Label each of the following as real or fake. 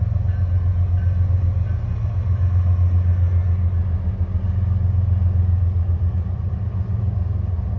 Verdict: real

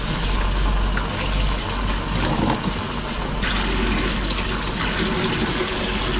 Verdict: real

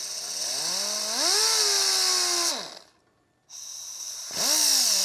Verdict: real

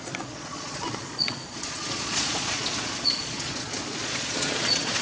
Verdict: fake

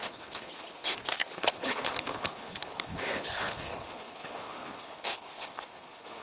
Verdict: fake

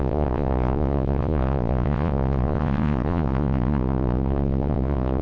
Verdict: fake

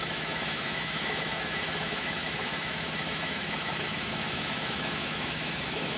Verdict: fake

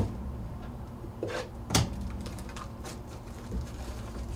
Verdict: fake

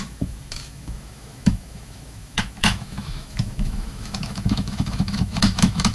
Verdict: fake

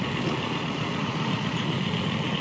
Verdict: fake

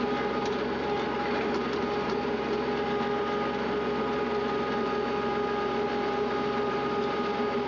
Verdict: real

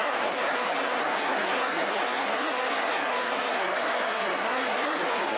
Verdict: fake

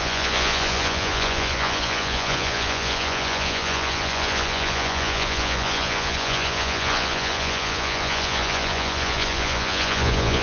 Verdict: fake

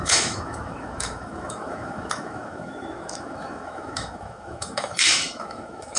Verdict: fake